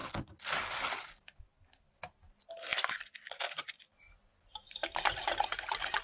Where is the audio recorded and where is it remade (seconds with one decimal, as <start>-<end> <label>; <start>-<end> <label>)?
0.0-6.0 recorded